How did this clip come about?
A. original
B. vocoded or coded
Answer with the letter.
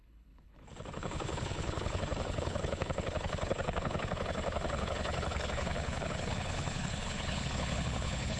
B